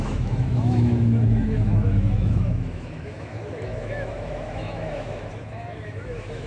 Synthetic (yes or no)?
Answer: yes